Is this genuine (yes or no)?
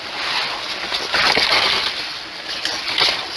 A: yes